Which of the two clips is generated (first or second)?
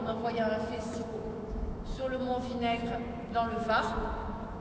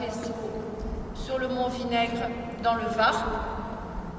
first